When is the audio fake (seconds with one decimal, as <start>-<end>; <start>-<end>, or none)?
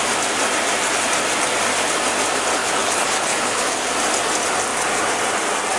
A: 2.6-3.9